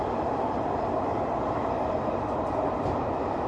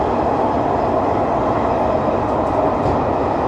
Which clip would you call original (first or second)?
second